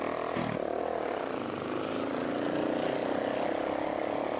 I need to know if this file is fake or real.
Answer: real